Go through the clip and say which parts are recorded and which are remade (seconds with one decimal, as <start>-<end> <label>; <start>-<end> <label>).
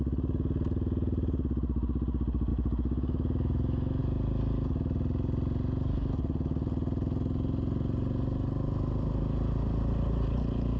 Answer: 0.0-2.5 recorded; 2.5-4.0 remade; 4.0-10.8 recorded